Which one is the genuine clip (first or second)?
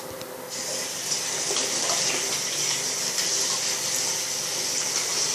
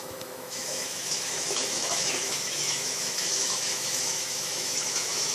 first